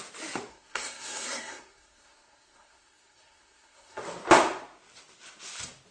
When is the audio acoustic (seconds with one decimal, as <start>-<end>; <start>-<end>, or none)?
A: 0.0-0.5; 4.0-5.9